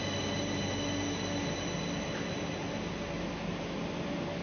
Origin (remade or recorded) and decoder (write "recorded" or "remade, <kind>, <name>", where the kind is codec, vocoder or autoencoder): recorded